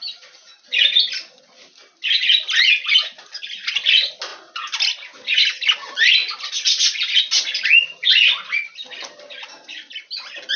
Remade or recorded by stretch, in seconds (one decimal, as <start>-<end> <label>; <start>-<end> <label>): 0.0-10.6 recorded